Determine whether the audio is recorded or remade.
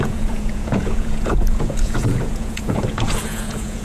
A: remade